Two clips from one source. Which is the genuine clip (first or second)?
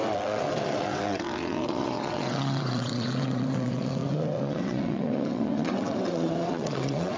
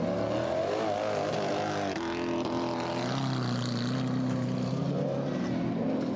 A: second